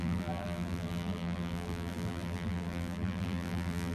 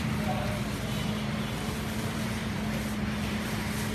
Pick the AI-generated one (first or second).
first